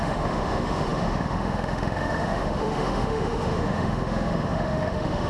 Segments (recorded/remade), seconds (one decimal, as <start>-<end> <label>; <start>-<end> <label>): 0.0-5.3 remade